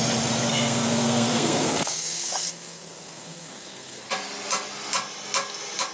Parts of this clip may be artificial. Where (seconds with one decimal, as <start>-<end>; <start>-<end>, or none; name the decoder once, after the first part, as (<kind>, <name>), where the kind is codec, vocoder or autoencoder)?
0.5-4.0 (codec, SNAC)

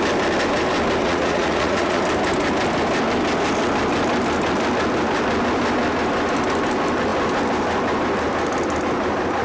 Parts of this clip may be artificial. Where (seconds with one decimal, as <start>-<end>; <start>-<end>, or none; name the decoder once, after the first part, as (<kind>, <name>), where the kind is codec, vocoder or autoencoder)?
1.0-2.0 (vocoder, Vocos)

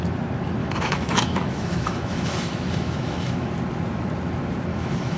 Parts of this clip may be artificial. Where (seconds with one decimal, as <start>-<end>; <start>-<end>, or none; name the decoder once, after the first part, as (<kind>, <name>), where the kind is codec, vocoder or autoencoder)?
0.6-3.5 (autoencoder, DAC-VAE); 4.7-5.2